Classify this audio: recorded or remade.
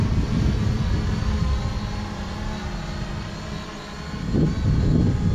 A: recorded